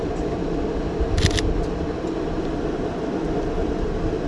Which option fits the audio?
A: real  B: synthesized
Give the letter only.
A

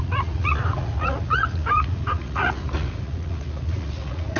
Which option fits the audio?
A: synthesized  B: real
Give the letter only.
A